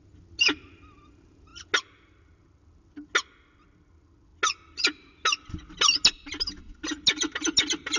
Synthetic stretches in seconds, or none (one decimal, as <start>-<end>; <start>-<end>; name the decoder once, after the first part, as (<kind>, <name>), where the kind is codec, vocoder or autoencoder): none

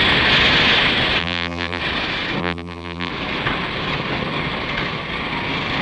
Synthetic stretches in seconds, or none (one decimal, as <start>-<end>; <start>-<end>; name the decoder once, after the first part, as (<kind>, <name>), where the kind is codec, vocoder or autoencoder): 1.2-1.8 (vocoder, BigVGAN v2); 2.4-3.1

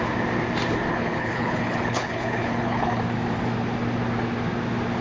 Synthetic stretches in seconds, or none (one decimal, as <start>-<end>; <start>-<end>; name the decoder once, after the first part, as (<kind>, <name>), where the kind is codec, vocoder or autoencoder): 0.9-3.0 (codec, HILCodec)

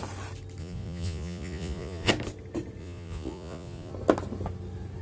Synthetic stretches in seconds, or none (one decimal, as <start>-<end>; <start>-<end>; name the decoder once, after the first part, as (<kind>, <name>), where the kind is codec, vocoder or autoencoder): 0.6-2.1 (vocoder, Vocos); 2.8-3.9

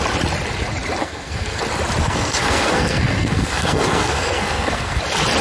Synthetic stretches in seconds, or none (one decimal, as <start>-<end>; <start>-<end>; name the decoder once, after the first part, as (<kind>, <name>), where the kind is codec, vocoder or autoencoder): 1.0-1.6 (codec, SNAC); 2.0-5.0

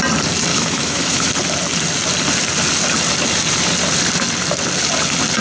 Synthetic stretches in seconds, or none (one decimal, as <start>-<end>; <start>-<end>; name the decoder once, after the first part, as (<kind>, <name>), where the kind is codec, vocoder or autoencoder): 0.5-1.3 (autoencoder, DAC-VAE)

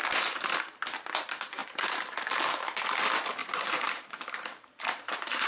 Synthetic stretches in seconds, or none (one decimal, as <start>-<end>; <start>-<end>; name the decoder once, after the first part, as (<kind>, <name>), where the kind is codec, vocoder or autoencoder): 0.0-0.8 (vocoder, BigVGAN v2); 1.6-2.8; 3.4-5.5

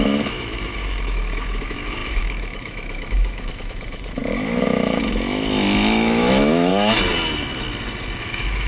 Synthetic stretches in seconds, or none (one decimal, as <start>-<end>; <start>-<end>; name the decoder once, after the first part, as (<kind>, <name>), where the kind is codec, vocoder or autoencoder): 0.0-6.7 (autoencoder, DAC-VAE); 8.2-8.7